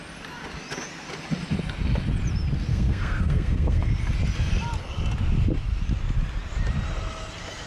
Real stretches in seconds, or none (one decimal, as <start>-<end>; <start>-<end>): 0.0-2.7; 3.9-7.7